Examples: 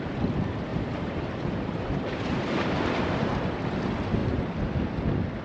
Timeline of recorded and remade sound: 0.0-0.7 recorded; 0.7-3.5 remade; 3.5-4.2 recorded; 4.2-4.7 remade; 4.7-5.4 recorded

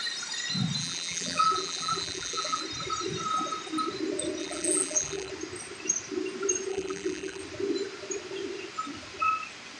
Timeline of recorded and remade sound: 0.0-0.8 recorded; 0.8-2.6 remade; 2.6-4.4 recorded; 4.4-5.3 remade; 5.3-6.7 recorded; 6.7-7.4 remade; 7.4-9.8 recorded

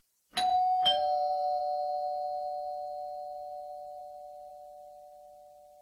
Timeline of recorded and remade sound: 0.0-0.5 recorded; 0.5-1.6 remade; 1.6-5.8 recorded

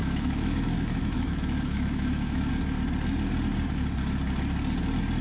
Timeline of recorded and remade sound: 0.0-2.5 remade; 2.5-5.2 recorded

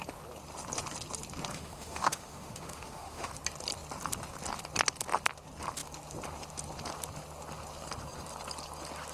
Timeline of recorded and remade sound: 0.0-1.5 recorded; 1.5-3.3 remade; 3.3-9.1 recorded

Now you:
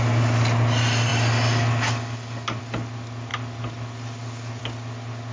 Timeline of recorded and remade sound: 0.0-5.3 recorded

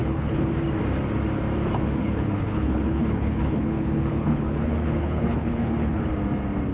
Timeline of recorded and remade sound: 0.0-0.5 remade; 0.5-2.0 recorded; 2.0-6.0 remade; 6.0-6.7 recorded

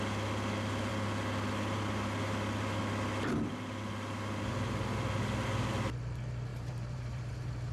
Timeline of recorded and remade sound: 0.0-6.5 recorded; 6.5-7.3 remade; 7.3-7.7 recorded